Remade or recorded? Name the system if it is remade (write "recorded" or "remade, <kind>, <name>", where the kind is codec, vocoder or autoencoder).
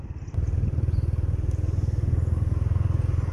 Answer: recorded